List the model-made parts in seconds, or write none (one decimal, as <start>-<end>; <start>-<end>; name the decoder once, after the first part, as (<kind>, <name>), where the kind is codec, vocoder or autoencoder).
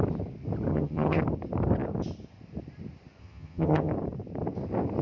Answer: 0.7-1.2 (vocoder, HiFi-GAN); 3.2-3.9